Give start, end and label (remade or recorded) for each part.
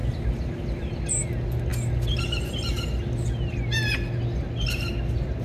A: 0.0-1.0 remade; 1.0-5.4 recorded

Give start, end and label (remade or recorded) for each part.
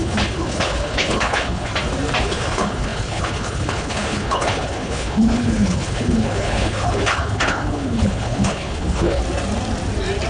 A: 0.0-1.7 remade; 1.7-2.2 recorded; 2.2-9.2 remade; 9.2-10.3 recorded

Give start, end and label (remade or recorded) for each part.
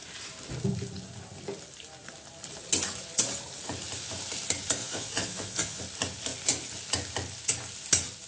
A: 0.0-4.8 recorded; 4.8-5.8 remade; 5.8-8.3 recorded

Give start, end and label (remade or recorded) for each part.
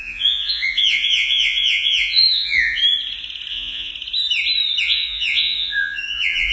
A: 0.0-2.8 remade; 2.8-3.5 recorded; 3.5-3.9 remade; 3.9-4.8 recorded; 4.8-6.5 remade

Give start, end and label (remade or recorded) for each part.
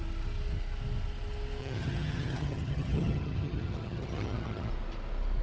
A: 0.0-1.6 recorded; 1.6-4.7 remade; 4.7-5.4 recorded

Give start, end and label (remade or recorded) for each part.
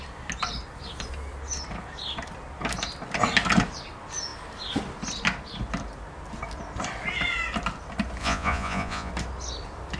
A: 0.0-8.2 recorded; 8.2-9.1 remade; 9.1-10.0 recorded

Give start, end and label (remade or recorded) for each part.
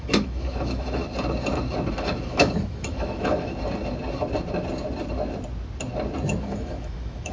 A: 0.0-1.0 remade; 1.0-1.9 recorded; 1.9-3.5 remade; 3.5-6.4 recorded; 6.4-7.3 remade